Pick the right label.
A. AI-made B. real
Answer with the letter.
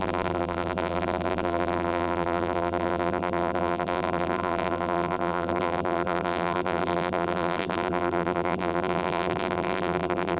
A